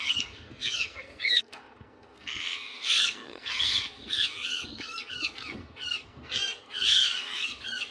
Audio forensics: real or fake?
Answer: fake